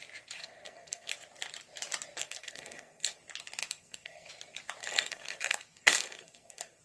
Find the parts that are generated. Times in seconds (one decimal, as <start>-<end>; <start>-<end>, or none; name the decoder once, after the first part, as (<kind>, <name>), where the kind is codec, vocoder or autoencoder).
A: 0.4-1.1 (codec, SNAC); 2.2-3.2; 3.6-4.3; 4.8-6.8